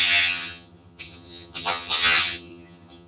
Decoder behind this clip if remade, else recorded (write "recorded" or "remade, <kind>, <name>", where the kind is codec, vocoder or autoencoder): remade, vocoder, HiFi-GAN